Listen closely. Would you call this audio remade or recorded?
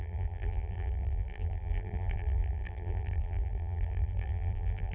remade